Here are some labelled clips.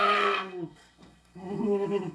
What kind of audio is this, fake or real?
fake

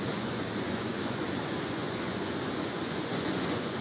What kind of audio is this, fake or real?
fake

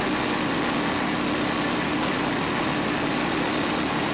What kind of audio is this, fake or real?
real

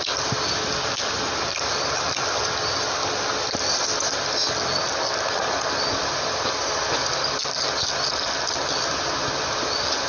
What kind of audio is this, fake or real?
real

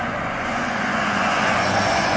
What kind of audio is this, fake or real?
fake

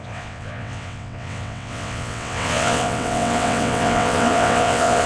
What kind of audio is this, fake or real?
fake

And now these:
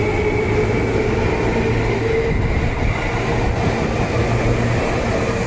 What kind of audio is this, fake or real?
real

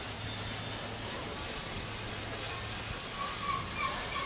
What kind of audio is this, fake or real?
real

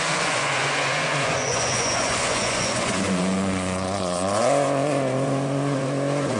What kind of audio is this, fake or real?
fake